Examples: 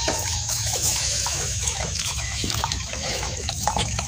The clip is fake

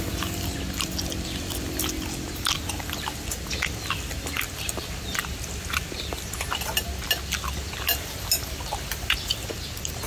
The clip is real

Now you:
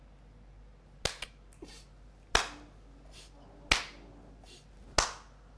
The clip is real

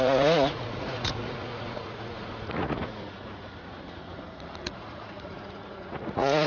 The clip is fake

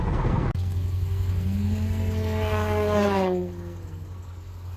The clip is fake